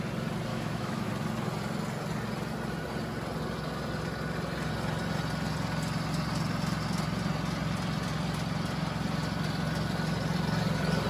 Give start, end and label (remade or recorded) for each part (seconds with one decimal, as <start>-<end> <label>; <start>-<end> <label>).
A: 0.0-0.5 recorded; 0.5-1.1 remade; 1.1-11.1 recorded